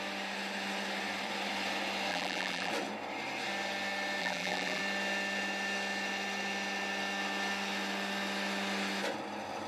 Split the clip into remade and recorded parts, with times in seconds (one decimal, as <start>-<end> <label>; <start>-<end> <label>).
0.0-2.1 recorded; 2.1-2.7 remade; 2.7-4.2 recorded; 4.2-4.8 remade; 4.8-9.7 recorded